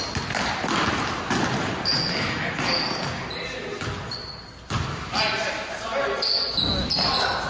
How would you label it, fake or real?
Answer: real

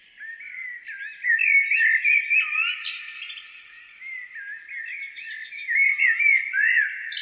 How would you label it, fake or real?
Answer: real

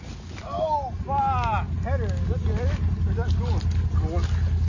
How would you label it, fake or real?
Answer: real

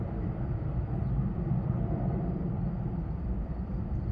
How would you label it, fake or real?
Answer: fake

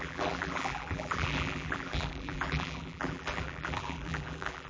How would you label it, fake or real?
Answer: fake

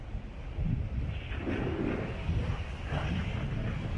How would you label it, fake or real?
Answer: real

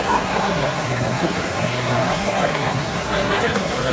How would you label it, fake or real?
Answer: fake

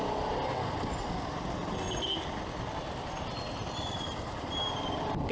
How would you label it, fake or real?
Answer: real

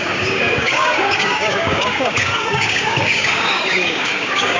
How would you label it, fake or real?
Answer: fake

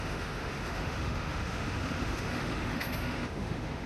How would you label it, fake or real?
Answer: fake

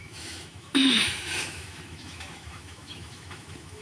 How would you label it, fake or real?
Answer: fake